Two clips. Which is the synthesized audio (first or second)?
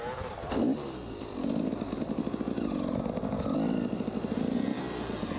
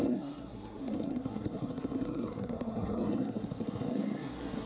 second